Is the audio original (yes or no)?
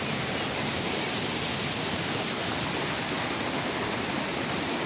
yes